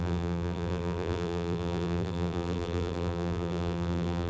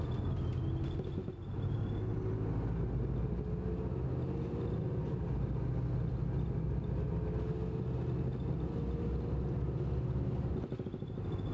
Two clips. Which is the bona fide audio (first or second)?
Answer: second